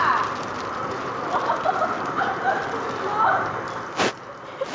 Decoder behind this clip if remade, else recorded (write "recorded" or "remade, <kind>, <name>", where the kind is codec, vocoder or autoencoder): remade, vocoder, BigVGAN v2